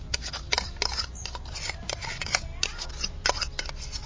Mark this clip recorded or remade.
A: recorded